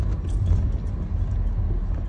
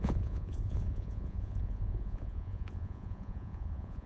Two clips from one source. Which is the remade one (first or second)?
second